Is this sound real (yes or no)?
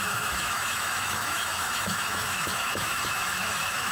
no